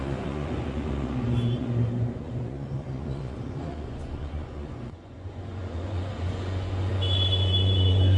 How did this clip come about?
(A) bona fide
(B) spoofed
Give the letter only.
B